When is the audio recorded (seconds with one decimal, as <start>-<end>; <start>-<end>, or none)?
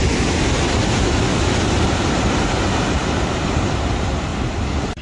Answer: 0.0-2.9; 4.3-5.0